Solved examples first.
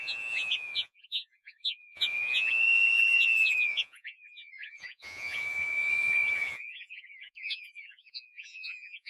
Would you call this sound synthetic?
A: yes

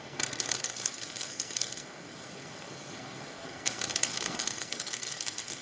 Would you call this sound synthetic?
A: yes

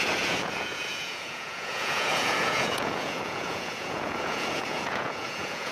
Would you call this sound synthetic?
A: yes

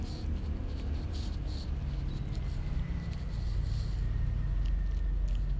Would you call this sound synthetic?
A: no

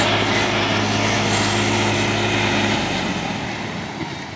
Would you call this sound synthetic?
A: no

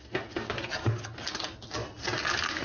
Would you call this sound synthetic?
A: no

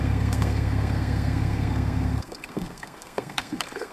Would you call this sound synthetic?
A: yes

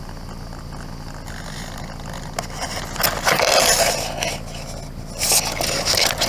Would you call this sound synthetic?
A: no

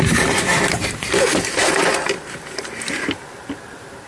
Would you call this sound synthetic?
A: no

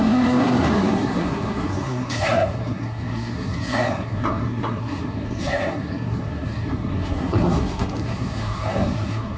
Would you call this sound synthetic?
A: yes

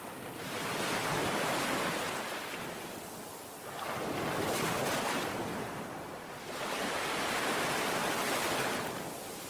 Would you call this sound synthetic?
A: no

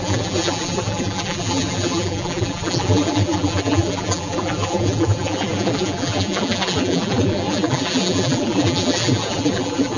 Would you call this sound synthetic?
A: yes